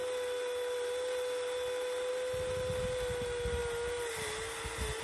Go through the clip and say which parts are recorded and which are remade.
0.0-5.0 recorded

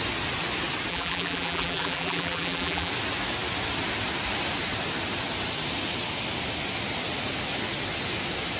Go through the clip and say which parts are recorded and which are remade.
0.0-0.9 recorded; 0.9-2.9 remade; 2.9-8.6 recorded